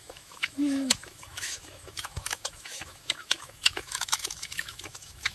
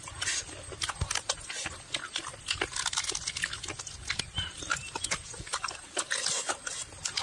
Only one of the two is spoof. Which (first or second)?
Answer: first